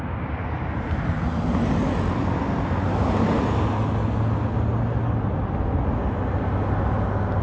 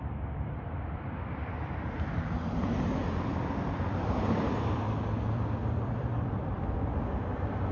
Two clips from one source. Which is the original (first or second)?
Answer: first